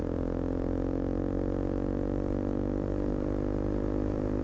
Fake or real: real